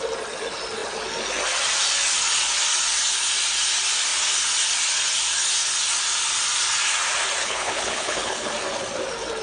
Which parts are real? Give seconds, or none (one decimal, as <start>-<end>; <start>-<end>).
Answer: 0.0-7.4; 8.5-9.4